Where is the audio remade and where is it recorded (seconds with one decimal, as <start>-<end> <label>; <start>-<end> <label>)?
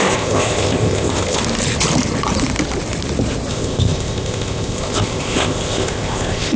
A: 0.0-1.4 remade; 1.4-3.5 recorded; 3.5-6.6 remade